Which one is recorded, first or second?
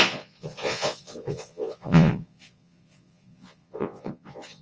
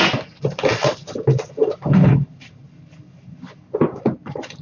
second